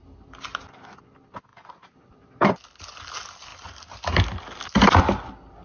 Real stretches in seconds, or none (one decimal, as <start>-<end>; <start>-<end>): 0.0-1.5; 2.5-5.6